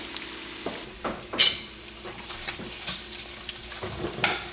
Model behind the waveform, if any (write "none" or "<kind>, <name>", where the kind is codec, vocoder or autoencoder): none